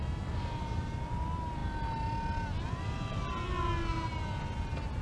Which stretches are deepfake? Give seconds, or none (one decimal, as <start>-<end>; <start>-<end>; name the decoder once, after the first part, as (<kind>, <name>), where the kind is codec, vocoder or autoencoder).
none